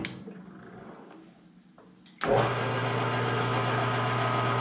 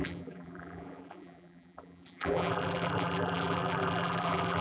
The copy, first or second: second